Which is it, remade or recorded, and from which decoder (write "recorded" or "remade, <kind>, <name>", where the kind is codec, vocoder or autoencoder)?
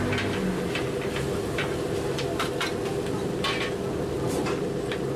recorded